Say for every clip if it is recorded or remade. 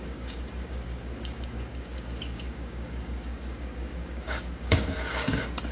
remade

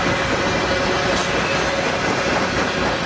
recorded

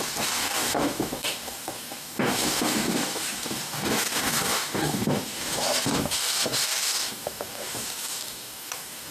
remade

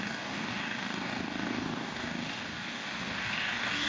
remade